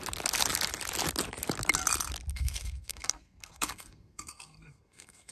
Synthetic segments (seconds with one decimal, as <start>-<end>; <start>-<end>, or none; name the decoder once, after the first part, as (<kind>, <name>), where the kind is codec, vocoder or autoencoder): 2.3-5.3 (codec, SNAC)